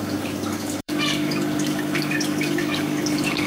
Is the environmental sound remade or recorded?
remade